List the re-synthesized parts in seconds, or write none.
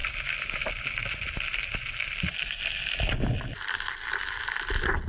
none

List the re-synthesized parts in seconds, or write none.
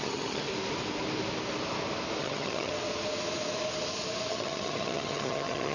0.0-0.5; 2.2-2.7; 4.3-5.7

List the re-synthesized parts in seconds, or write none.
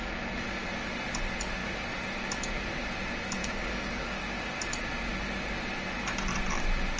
3.4-4.2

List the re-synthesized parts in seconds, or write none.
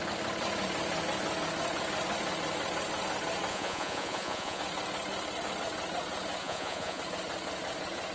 3.5-4.6; 6.4-7.0